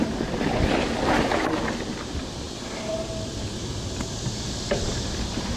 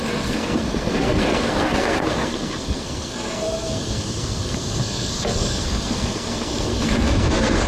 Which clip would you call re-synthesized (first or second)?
second